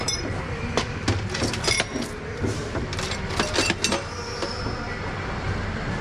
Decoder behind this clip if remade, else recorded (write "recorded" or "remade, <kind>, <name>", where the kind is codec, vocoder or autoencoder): recorded